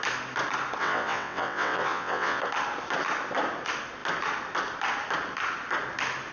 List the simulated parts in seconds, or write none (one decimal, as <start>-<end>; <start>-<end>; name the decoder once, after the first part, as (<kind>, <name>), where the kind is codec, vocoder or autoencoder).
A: 0.8-2.4 (vocoder, WaveNeXt)